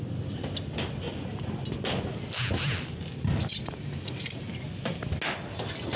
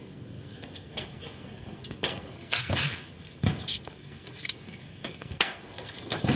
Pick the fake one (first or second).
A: second